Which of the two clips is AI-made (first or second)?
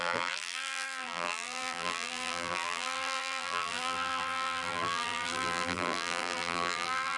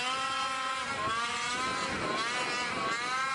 first